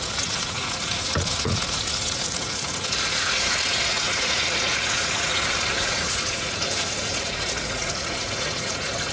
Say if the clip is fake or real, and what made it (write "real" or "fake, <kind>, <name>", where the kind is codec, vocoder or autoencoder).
fake, vocoder, Vocos